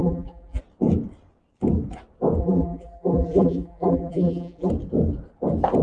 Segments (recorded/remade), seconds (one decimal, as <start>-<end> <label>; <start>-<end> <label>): 0.0-0.6 remade; 0.6-2.4 recorded; 2.4-4.7 remade; 4.7-5.8 recorded